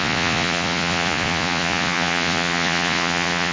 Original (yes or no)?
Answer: no